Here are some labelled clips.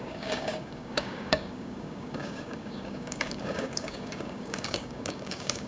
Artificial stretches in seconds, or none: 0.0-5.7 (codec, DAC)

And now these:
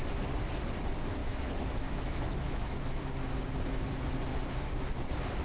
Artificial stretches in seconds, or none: 1.2-3.1 (autoencoder, DAC-VAE)

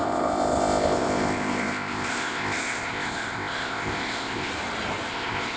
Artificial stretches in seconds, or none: 0.0-4.5 (codec, ZipCodec); 5.1-5.6

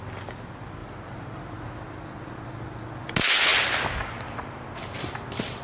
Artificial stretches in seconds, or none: 0.8-1.4 (vocoder, BigVGAN v2)